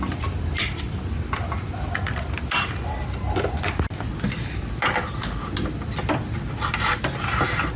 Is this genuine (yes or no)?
yes